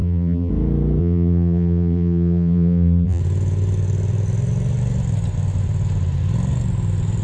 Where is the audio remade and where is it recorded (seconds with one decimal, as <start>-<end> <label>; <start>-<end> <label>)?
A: 0.0-0.5 remade; 0.5-1.0 recorded; 1.0-3.2 remade; 3.2-7.2 recorded